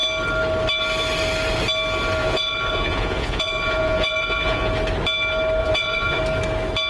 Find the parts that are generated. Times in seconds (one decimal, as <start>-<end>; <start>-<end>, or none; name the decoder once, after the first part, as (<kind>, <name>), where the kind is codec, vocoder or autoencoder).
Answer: 2.2-4.7 (vocoder, Vocos); 5.6-6.2

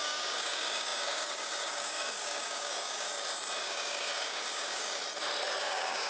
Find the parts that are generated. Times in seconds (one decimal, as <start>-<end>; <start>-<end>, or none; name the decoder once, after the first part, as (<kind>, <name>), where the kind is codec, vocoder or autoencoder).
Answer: 0.0-3.1 (codec, DAC); 3.6-5.0; 5.6-6.1

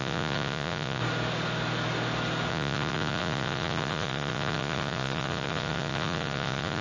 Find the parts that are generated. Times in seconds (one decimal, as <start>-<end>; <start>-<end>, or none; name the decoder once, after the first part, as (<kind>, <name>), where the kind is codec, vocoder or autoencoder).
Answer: 0.0-1.0 (vocoder, Vocos); 2.5-6.8

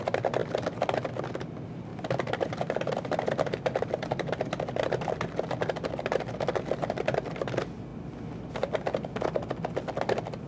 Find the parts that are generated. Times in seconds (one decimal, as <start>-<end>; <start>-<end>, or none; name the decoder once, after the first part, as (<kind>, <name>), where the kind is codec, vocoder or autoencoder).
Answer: 0.4-1.2 (vocoder, BigVGAN v2); 1.9-6.4